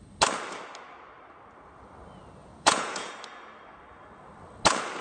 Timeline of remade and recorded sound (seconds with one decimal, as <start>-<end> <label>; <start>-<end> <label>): 0.0-2.4 recorded; 2.4-3.1 remade; 3.1-5.0 recorded